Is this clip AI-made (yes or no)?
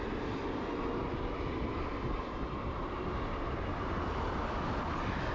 no